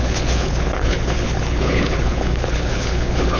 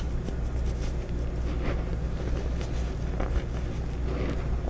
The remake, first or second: first